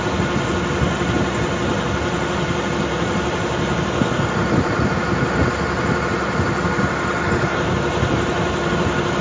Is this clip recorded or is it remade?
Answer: recorded